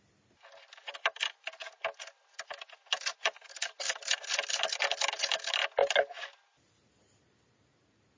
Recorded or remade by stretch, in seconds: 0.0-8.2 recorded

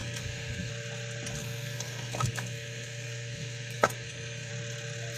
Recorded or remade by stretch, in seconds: 0.0-0.7 remade; 0.7-1.4 recorded; 1.4-4.5 remade; 4.5-5.2 recorded

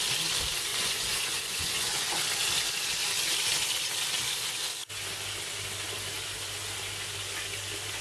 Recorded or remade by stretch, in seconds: 0.0-0.7 recorded; 0.7-2.2 remade; 2.2-8.0 recorded

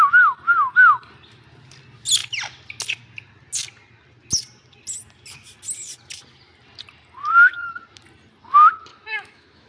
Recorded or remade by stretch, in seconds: 0.0-8.9 recorded; 8.9-9.7 remade

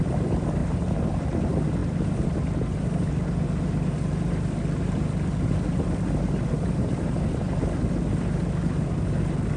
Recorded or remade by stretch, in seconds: 0.0-1.8 recorded; 1.8-3.1 remade; 3.1-9.6 recorded